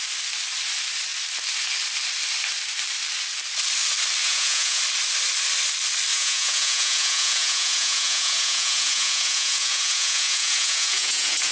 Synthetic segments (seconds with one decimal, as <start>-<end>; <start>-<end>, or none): 4.2-4.8; 6.1-11.5